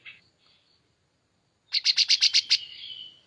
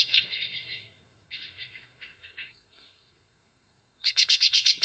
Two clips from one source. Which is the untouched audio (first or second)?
first